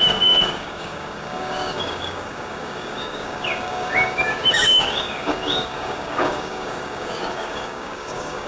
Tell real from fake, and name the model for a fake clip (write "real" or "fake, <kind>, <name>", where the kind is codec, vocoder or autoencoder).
fake, codec, DAC